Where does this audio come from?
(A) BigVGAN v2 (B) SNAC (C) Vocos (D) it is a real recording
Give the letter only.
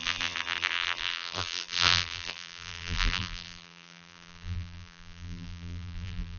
A